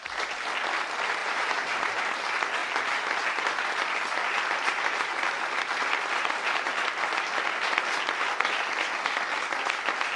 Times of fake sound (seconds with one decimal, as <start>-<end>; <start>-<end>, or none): 1.2-2.0